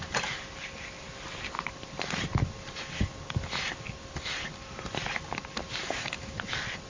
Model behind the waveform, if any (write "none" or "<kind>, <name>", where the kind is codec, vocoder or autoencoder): none